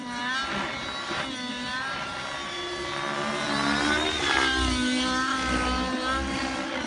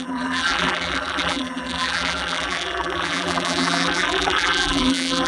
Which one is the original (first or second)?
first